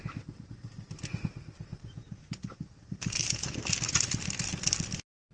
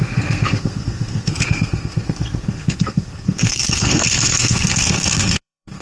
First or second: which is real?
first